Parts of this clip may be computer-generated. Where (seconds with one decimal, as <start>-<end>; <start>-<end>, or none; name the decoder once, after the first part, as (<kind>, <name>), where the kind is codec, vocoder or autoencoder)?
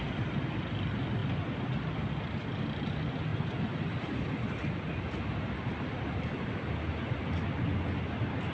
none